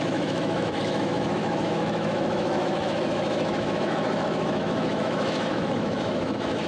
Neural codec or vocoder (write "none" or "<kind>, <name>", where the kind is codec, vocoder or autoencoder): autoencoder, DAC-VAE